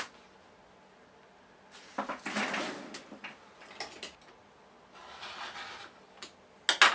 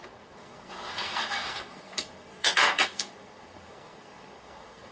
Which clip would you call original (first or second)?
first